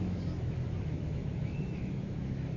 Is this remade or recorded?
remade